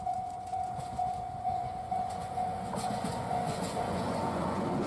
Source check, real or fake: fake